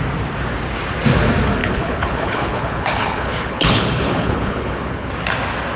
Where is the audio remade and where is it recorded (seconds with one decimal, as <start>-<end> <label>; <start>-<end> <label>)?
0.0-1.6 recorded; 1.6-5.1 remade; 5.1-5.8 recorded